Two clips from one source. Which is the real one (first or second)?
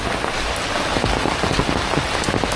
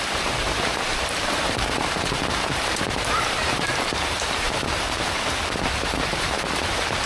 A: first